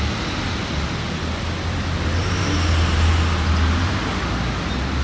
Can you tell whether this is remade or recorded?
recorded